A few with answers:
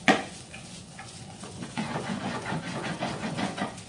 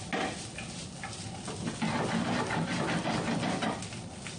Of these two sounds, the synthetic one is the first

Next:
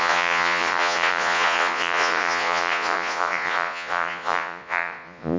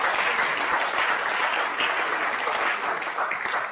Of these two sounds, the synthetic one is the first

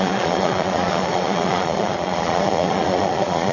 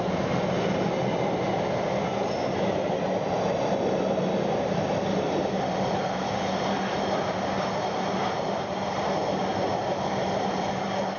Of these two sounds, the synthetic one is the first